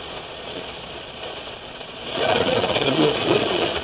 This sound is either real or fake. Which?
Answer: fake